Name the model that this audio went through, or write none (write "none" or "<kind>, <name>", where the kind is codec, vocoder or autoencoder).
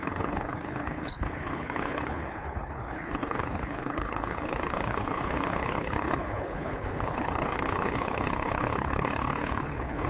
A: codec, HILCodec